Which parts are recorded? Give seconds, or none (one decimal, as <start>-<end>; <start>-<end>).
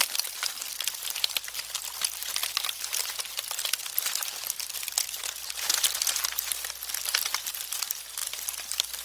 0.0-8.2